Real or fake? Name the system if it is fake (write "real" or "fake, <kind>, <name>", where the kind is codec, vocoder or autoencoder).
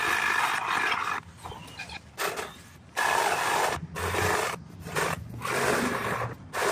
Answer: real